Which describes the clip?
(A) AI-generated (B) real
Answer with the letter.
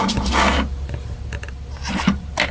B